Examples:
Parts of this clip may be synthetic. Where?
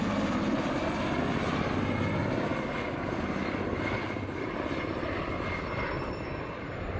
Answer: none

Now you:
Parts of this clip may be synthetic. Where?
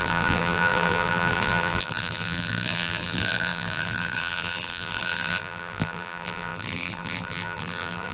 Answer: 0.0-8.1 (vocoder, BigVGAN v2)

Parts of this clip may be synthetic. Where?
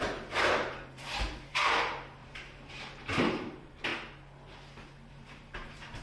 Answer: 0.0-3.9 (vocoder, BigVGAN v2); 5.1-6.0